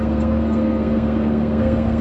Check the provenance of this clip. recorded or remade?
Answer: remade